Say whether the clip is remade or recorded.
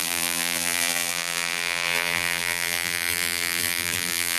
remade